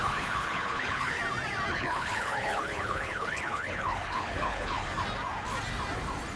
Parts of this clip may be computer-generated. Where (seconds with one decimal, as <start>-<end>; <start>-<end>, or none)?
0.0-1.2; 1.7-4.9